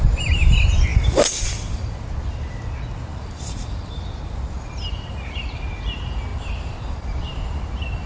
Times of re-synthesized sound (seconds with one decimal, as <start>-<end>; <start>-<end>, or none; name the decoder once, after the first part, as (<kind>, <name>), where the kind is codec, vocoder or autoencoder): 0.9-1.8 (vocoder, BigVGAN v2); 3.1-4.0